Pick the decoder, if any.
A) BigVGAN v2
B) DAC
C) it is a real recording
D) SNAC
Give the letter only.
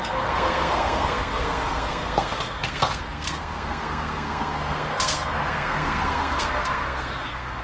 D